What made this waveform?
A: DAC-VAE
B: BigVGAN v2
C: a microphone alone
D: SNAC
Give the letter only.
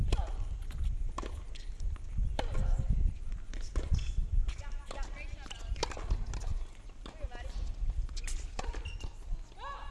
C